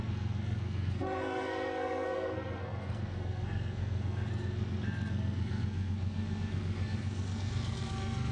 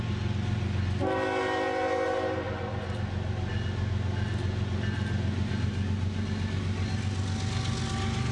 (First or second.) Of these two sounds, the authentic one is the second